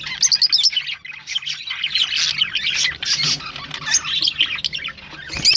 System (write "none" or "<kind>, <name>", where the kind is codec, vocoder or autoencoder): none